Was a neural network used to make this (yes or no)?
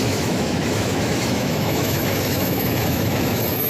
yes